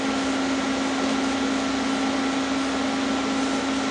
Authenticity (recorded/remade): recorded